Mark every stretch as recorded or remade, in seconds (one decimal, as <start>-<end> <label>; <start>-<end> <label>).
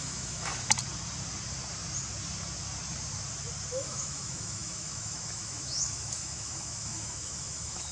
0.0-0.5 remade; 0.5-3.7 recorded; 3.7-7.9 remade